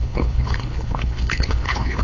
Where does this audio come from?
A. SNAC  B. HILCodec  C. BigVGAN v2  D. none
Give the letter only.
B